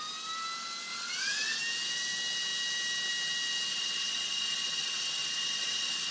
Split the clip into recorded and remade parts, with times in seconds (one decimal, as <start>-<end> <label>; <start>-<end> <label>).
0.0-0.9 recorded; 0.9-1.6 remade; 1.6-3.7 recorded; 3.7-6.1 remade